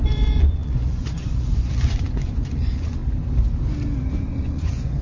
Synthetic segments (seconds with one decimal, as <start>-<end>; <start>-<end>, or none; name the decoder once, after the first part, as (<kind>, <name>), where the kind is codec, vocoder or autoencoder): 0.0-3.0 (vocoder, Vocos); 4.1-5.0